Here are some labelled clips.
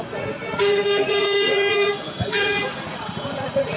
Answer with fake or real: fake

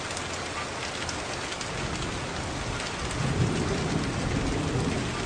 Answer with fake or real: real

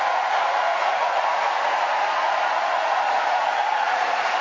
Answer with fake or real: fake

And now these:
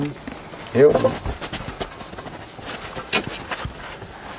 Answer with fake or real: real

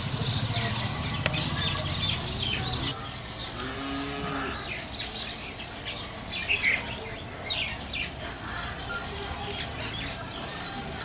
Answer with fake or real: real